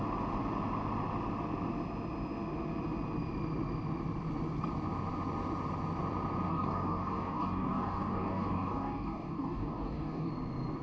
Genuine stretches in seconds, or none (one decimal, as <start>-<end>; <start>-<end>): 0.0-6.5; 10.3-10.8